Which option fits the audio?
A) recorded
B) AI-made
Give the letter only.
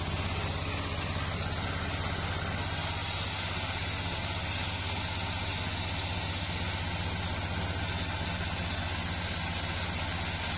A